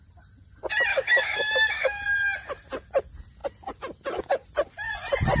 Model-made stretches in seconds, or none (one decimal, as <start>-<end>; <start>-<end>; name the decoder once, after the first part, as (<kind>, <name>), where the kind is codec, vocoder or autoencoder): 0.9-2.0 (codec, DAC)